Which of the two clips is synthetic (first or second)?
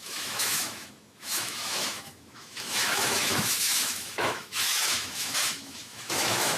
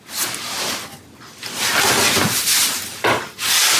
first